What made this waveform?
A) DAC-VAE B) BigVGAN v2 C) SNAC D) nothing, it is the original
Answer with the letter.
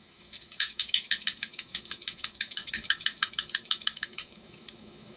A